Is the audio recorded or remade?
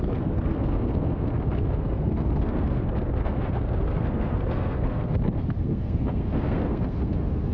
remade